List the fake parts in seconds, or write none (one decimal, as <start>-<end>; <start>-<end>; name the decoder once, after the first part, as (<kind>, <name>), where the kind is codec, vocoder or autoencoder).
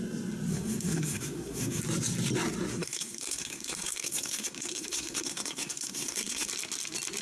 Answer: 0.5-1.8 (codec, SNAC); 2.7-6.5